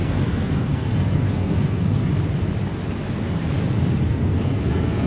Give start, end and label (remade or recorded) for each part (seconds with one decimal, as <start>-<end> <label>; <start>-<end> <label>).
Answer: 0.0-2.1 remade; 2.1-4.1 recorded; 4.1-5.1 remade